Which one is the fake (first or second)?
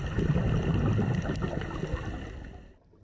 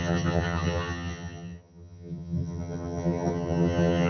second